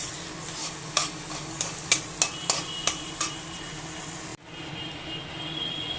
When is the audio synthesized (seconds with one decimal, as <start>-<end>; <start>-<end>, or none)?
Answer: 0.6-1.9